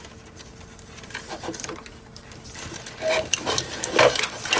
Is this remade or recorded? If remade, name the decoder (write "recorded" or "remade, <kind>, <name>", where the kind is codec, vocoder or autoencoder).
recorded